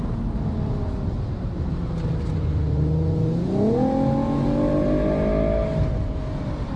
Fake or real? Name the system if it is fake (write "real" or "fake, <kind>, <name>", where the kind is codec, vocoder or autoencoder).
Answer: real